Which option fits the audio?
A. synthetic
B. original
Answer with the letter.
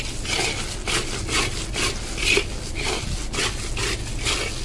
B